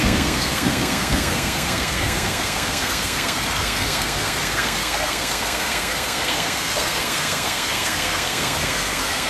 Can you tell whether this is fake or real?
fake